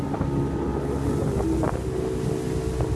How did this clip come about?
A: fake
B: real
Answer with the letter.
B